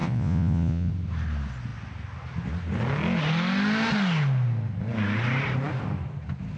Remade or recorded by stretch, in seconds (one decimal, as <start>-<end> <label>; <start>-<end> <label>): 0.0-0.9 remade; 0.9-6.6 recorded